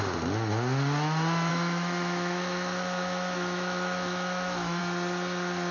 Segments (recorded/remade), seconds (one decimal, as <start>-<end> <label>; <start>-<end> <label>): 0.0-1.5 recorded; 1.5-4.8 remade; 4.8-5.7 recorded